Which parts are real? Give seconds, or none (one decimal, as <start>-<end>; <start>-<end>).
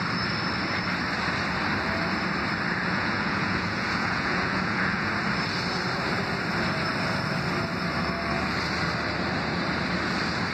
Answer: 0.0-2.8; 5.1-10.5